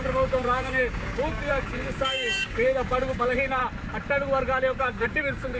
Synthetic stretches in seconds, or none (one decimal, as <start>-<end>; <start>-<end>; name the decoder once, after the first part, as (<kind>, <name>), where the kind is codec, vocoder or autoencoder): 0.0-3.6 (codec, DAC); 4.8-5.6